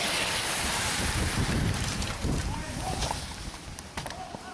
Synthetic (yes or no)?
yes